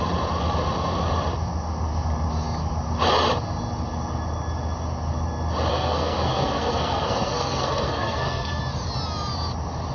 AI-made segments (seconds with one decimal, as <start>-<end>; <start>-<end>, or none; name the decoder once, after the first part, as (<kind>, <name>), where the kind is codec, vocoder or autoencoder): 5.7-8.6 (codec, SNAC)